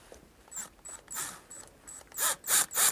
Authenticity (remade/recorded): recorded